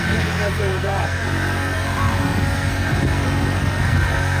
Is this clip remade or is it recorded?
remade